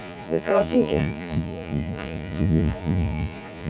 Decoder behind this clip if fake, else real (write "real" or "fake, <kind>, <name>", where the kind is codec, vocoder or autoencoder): fake, vocoder, Vocos